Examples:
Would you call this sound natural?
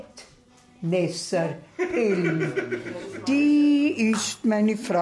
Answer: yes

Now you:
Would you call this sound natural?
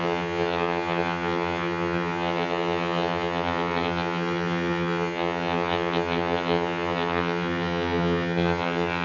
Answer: no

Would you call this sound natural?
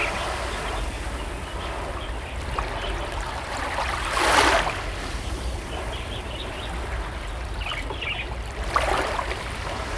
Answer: yes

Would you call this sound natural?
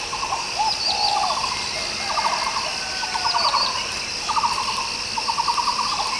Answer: yes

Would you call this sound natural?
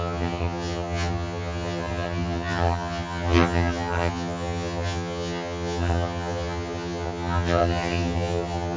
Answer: no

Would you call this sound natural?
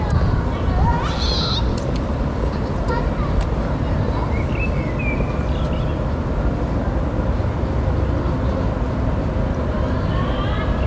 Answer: yes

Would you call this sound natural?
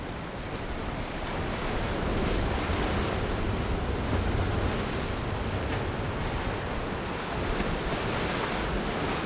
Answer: yes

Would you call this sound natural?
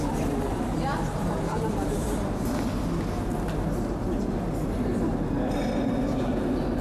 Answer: yes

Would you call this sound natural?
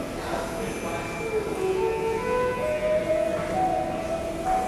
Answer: yes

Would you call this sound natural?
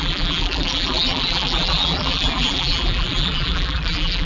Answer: no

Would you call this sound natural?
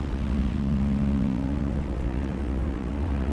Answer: no